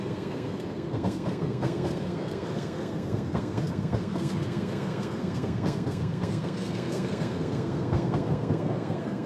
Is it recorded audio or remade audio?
remade